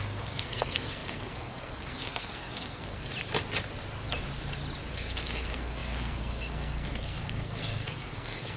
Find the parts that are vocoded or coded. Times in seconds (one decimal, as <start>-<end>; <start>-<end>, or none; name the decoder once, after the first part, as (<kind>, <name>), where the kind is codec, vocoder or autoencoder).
0.0-3.1 (codec, SNAC); 4.9-8.6